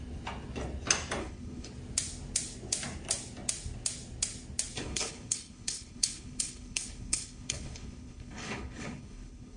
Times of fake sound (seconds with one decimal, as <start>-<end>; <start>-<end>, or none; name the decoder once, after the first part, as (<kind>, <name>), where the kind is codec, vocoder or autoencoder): 1.2-1.7 (codec, HILCodec); 4.8-9.6